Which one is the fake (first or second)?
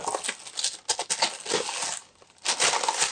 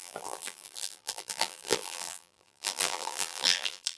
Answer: second